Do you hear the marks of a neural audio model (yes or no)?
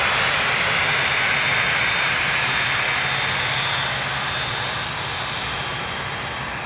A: no